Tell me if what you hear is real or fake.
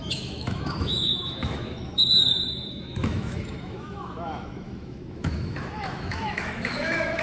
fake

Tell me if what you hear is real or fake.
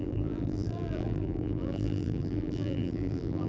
fake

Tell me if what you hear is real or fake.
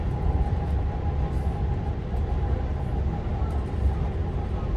real